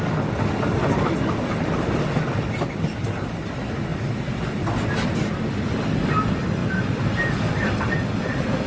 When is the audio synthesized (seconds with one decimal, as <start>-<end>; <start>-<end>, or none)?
none